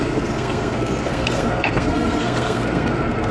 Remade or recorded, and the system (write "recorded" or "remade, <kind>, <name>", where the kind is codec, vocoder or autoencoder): remade, codec, SNAC